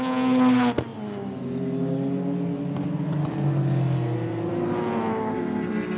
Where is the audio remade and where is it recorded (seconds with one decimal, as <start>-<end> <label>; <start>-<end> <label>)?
0.0-6.0 recorded